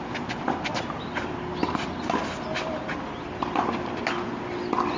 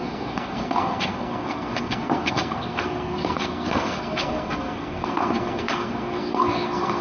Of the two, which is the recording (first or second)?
first